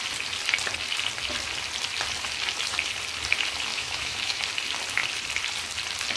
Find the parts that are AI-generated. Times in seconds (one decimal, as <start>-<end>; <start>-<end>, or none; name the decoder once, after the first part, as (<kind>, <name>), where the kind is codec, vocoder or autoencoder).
3.7-4.4 (autoencoder, DAC-VAE)